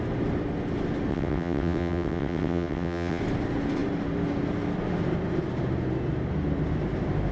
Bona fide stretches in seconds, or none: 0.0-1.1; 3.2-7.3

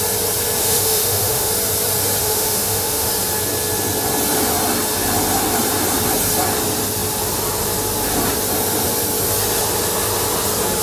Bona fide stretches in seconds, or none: 0.0-0.6; 1.5-2.2; 3.1-10.8

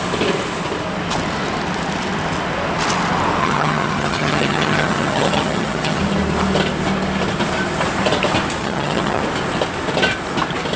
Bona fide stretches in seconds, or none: 0.0-3.4; 6.0-8.6; 9.2-10.8

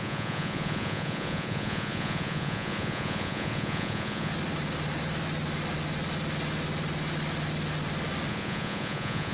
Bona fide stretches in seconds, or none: 4.3-8.3